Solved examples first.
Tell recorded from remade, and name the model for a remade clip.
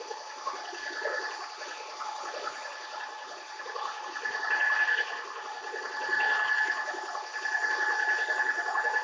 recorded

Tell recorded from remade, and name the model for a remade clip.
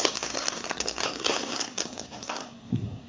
remade, codec, SNAC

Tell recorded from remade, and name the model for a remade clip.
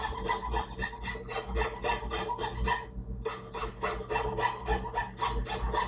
recorded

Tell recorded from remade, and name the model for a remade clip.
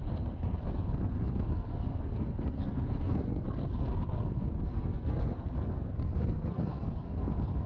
remade, codec, SNAC